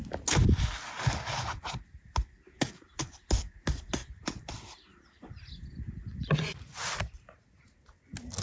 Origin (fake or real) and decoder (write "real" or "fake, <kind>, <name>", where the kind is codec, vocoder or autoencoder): real